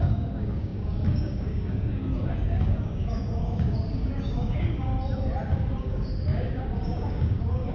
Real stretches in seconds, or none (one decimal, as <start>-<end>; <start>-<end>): 4.9-5.8